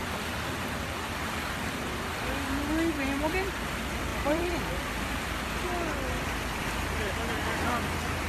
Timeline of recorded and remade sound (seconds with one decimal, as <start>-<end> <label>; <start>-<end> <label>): 0.0-1.6 remade; 1.6-4.1 recorded; 4.1-7.1 remade; 7.1-8.3 recorded